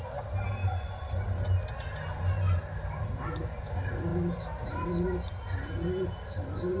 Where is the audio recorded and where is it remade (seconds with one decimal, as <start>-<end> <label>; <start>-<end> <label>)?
0.0-0.6 recorded; 0.6-1.2 remade; 1.2-6.8 recorded